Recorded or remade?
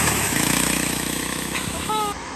remade